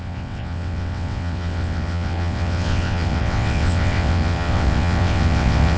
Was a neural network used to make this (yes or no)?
yes